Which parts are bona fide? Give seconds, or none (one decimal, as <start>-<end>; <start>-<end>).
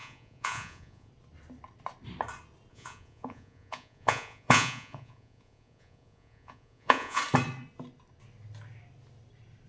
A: 1.1-2.7; 7.2-9.7